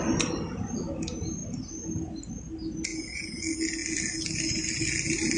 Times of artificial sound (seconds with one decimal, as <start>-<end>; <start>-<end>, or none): 2.9-3.4